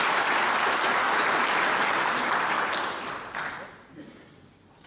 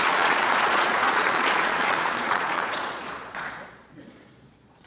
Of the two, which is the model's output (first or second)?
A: second